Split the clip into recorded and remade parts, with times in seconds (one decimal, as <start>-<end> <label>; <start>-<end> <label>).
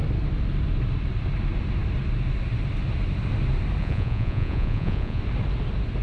0.0-3.8 recorded; 3.8-5.2 remade; 5.2-6.0 recorded